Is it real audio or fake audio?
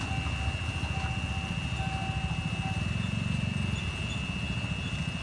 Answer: real